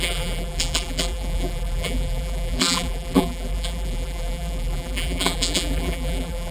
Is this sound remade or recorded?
remade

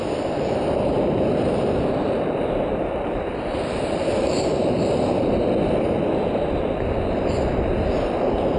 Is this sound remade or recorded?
remade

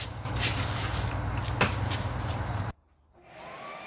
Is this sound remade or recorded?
recorded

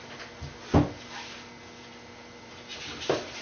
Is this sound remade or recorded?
recorded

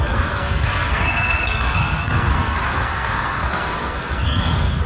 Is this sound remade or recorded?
remade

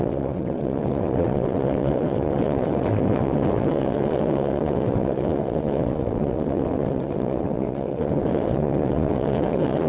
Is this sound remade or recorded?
remade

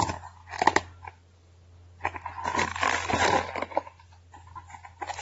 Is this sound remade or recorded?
recorded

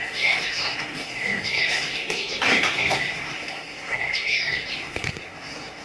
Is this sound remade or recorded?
remade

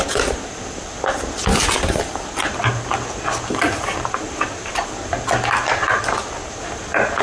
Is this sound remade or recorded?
recorded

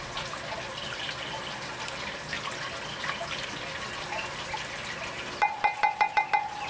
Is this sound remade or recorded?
recorded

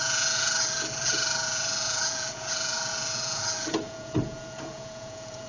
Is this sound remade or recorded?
remade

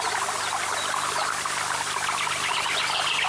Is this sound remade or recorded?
recorded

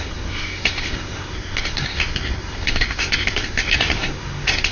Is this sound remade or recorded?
remade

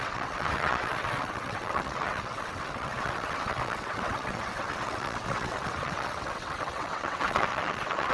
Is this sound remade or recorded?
remade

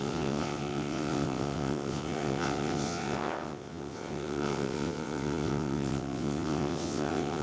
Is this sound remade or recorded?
remade